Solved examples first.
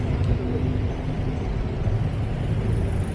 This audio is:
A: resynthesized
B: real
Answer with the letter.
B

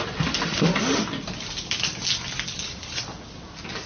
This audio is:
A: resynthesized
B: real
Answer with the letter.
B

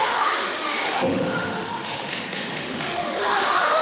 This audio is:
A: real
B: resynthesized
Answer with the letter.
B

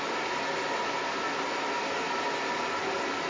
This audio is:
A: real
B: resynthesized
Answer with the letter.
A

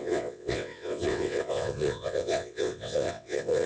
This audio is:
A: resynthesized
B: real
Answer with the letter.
A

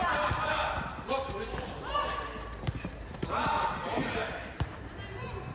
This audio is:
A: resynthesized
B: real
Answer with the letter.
B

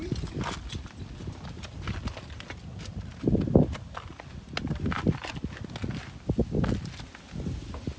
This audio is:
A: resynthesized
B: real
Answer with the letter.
B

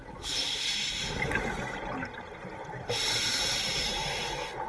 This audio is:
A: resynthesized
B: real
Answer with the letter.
B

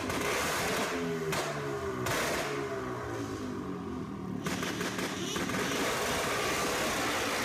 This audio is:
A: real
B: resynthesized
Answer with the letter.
A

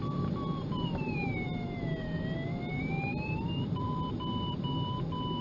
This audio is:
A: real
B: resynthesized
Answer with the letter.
B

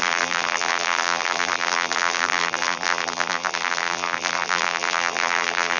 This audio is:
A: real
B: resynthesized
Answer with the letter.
B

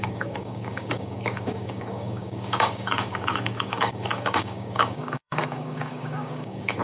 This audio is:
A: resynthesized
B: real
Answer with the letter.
A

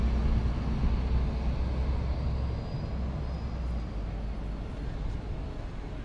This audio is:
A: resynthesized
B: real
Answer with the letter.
B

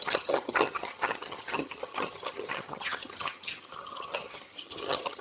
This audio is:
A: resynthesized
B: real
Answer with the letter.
A